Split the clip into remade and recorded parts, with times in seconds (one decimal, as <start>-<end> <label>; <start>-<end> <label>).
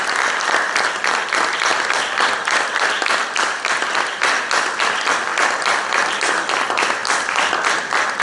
0.0-8.2 recorded